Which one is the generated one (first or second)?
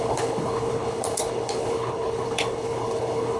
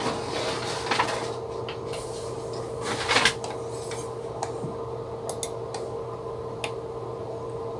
first